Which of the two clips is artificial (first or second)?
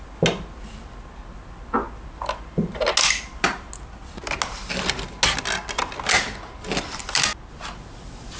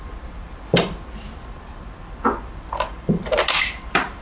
second